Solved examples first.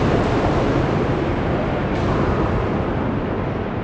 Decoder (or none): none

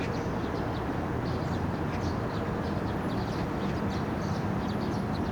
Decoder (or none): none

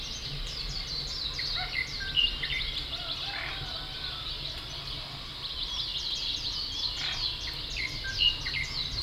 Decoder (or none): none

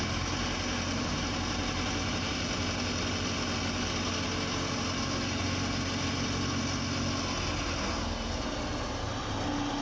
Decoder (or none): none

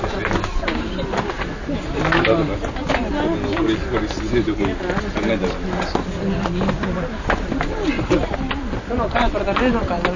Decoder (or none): none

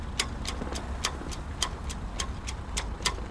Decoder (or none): none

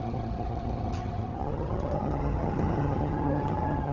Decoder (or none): vocoder, HiFi-GAN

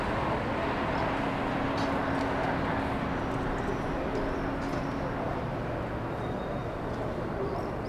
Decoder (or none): none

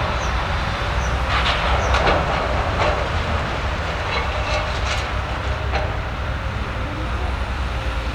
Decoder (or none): none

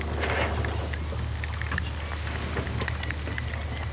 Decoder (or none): none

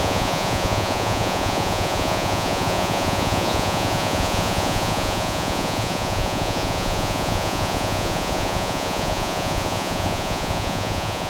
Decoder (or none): vocoder, Vocos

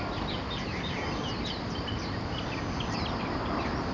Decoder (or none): none